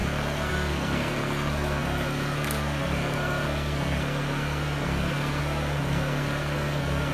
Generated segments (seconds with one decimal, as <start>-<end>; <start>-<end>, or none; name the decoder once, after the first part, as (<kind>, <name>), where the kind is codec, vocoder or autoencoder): 0.0-7.1 (codec, SNAC)